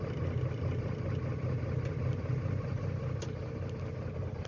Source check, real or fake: real